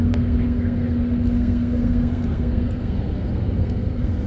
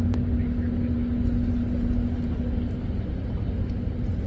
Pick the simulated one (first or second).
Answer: first